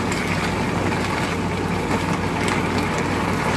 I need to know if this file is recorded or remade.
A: recorded